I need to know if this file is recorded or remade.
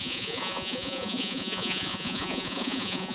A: remade